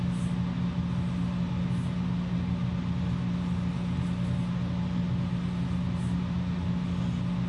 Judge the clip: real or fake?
real